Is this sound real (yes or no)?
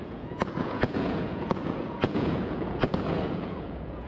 no